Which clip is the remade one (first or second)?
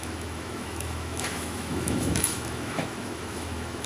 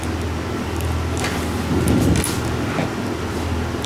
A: first